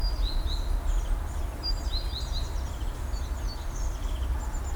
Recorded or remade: recorded